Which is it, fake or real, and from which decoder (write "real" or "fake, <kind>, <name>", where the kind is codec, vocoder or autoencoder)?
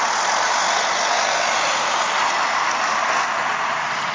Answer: real